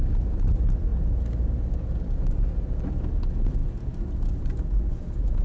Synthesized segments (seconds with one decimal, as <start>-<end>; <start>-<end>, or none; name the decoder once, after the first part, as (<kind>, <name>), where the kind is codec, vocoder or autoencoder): 3.6-4.9 (vocoder, BigVGAN v2)